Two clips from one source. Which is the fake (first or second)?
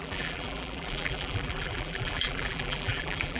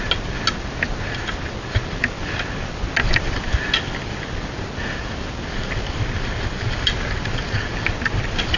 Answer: first